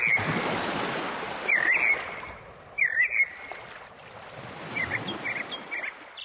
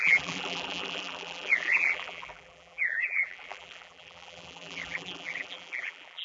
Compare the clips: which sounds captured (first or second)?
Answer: first